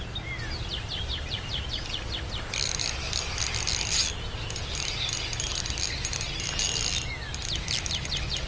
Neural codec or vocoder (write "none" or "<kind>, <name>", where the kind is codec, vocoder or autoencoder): none